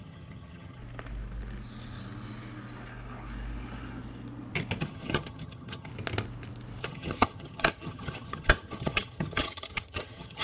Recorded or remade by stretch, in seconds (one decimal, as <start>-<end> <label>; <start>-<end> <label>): 0.0-0.8 remade; 0.8-4.8 recorded; 4.8-5.9 remade; 5.9-6.8 recorded; 6.8-10.4 remade